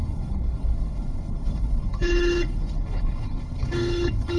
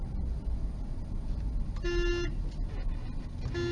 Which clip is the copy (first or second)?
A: first